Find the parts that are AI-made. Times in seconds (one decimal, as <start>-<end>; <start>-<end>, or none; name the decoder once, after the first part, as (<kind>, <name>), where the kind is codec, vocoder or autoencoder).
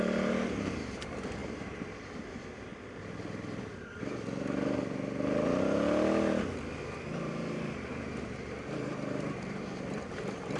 0.0-2.7 (vocoder, BigVGAN v2); 6.8-10.6